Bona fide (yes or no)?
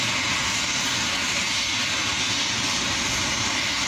yes